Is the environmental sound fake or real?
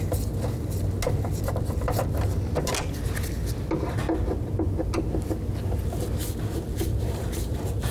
real